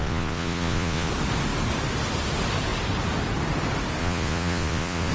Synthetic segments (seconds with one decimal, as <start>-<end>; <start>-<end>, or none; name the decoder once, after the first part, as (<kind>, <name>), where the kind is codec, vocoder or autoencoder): 0.0-1.1 (vocoder, Vocos); 4.0-5.1

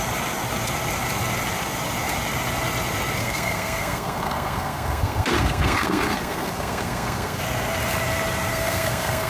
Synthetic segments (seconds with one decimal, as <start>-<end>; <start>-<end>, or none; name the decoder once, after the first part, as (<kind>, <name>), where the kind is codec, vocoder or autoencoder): 3.2-7.4 (codec, SNAC); 8.5-9.3

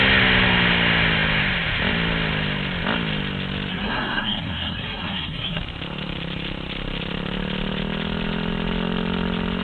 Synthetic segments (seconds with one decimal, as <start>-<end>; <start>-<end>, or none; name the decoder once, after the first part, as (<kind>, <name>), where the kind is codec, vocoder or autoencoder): 3.7-5.6 (codec, SNAC)

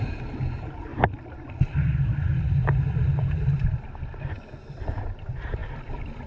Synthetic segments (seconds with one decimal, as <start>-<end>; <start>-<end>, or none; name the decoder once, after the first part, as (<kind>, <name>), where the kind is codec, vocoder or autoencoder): 0.0-0.9 (vocoder, BigVGAN v2); 4.7-6.3

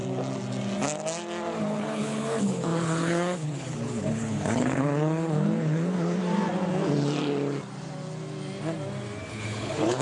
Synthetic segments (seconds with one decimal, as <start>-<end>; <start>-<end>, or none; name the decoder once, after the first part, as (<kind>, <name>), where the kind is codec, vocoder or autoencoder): 1.6-6.2 (codec, HILCodec); 9.3-10.0

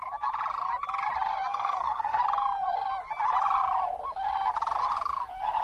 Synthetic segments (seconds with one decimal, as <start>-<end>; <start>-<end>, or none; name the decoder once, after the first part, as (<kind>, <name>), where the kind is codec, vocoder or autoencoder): 1.5-2.2 (codec, SNAC)

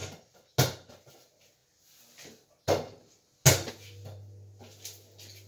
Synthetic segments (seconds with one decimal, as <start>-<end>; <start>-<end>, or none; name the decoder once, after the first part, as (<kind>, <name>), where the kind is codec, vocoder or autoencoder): none